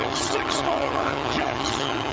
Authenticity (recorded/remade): remade